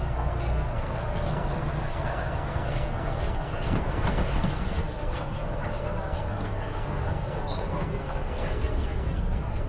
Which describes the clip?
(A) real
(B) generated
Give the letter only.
B